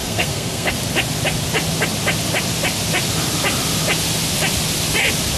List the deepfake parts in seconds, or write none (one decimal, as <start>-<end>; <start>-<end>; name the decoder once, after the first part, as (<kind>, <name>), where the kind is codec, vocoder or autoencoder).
0.0-0.7 (codec, SNAC)